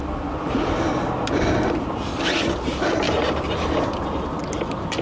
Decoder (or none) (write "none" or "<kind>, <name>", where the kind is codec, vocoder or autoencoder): none